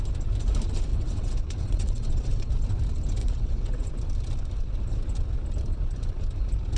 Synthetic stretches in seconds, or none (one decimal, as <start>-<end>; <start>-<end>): 0.9-2.5; 3.2-3.9